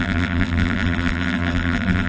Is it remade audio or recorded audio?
remade